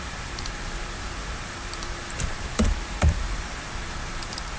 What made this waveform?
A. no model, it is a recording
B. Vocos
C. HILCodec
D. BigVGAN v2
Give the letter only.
D